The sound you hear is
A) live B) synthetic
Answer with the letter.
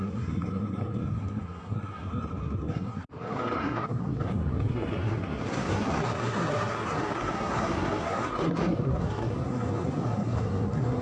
B